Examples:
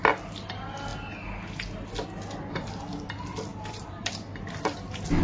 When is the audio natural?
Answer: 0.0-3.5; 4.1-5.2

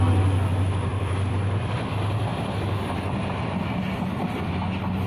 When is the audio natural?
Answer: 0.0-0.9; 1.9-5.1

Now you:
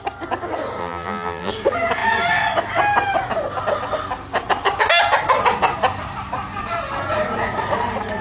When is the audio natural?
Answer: 0.0-0.8; 1.5-8.2

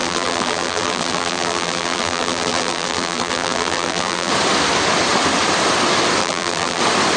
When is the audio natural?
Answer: 4.3-6.2; 6.8-7.2